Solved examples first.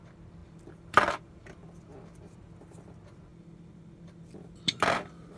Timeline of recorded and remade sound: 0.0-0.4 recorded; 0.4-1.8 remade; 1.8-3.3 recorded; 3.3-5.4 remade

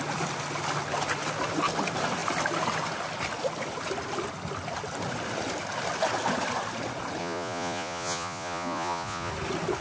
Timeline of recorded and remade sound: 0.0-7.2 recorded; 7.2-9.3 remade; 9.3-9.8 recorded

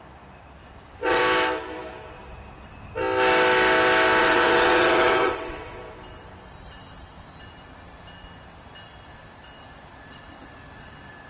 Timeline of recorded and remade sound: 0.0-0.6 recorded; 0.6-1.2 remade; 1.2-4.2 recorded; 4.2-5.8 remade; 5.8-11.3 recorded

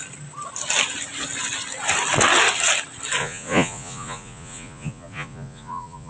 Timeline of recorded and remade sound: 0.0-3.2 recorded; 3.2-6.1 remade

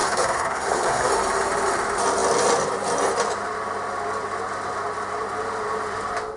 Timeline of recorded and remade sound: 0.0-1.1 remade; 1.1-6.4 recorded

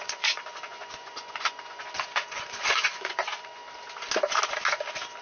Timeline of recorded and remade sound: 0.0-3.6 remade; 3.6-5.2 recorded